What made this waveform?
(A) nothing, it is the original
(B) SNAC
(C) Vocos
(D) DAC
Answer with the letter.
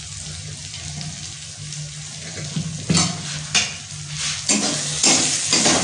A